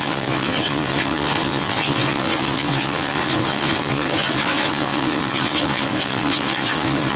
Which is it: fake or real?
fake